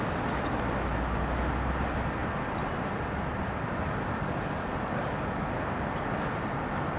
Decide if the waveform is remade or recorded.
recorded